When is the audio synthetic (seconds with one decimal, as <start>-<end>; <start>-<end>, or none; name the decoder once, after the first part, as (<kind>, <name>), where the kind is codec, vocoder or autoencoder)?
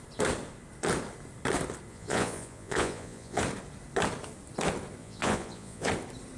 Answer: 1.9-3.4 (vocoder, Vocos); 5.0-5.9